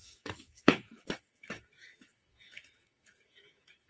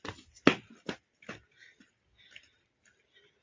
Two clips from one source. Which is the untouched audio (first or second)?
second